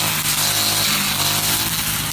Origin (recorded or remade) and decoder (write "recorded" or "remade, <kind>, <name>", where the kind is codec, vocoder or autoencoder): recorded